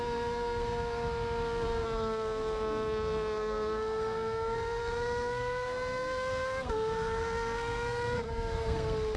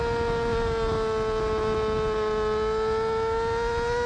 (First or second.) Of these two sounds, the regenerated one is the first